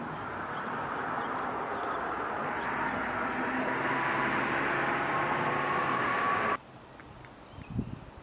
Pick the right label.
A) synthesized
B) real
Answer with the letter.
B